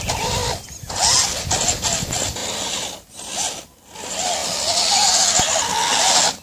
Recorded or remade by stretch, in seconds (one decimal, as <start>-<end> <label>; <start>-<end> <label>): 0.0-6.4 recorded